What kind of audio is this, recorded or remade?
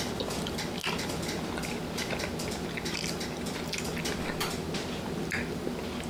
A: recorded